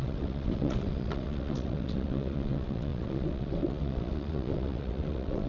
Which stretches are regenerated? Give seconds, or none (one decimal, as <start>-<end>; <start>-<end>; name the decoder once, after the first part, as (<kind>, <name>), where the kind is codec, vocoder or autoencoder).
0.0-5.5 (vocoder, WaveNeXt)